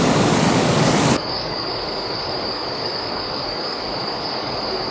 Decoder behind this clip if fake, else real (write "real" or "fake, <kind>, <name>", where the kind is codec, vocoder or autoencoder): fake, codec, DAC